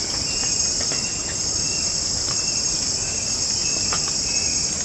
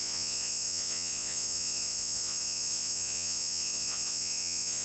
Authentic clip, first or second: first